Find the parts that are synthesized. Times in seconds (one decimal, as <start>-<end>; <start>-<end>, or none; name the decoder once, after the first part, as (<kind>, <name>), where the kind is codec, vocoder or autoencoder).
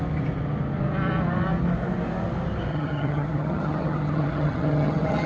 2.7-5.3 (vocoder, HiFi-GAN)